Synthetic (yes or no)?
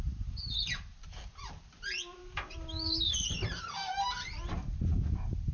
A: no